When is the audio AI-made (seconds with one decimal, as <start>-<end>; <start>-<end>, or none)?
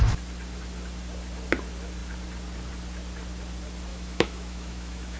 3.9-5.2